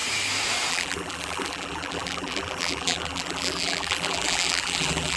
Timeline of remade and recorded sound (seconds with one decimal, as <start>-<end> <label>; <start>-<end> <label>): 0.0-0.7 recorded; 0.7-5.2 remade